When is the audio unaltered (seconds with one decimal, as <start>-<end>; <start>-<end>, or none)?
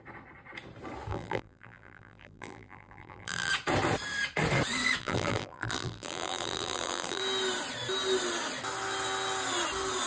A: 0.0-1.1; 3.5-5.0; 7.2-10.1